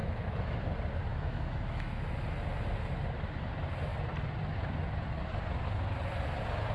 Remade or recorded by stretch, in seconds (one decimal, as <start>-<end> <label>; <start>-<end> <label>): 0.0-0.6 remade; 0.6-1.1 recorded; 1.1-2.0 remade; 2.0-6.7 recorded